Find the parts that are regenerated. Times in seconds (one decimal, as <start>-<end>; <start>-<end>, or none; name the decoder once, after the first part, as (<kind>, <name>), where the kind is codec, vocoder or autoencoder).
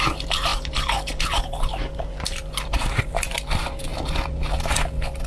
0.0-3.9 (vocoder, BigVGAN v2)